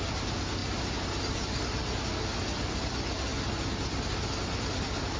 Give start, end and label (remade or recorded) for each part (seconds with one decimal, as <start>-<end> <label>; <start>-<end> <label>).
0.0-5.2 recorded